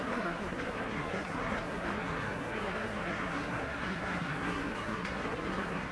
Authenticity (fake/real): fake